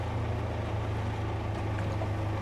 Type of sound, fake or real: real